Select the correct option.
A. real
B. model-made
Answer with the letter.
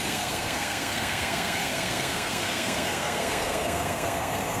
B